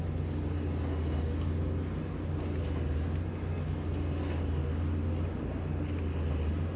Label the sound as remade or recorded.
recorded